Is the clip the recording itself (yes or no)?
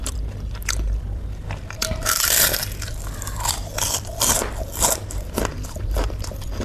no